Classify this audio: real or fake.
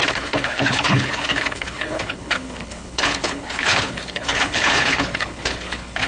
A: fake